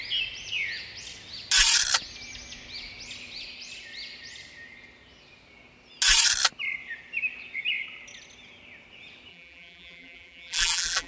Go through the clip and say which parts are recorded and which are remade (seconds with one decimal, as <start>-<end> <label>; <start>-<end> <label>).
0.0-9.3 recorded; 9.3-11.1 remade